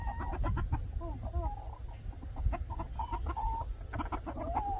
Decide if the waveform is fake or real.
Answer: real